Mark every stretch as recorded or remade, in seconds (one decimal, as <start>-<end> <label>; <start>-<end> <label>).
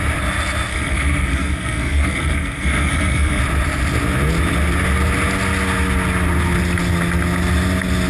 0.0-0.7 recorded; 0.7-3.4 remade; 3.4-8.1 recorded